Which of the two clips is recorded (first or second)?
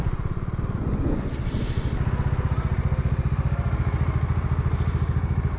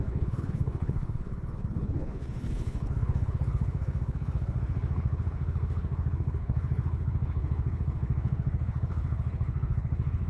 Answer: first